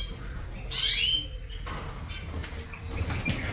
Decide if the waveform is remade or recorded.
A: recorded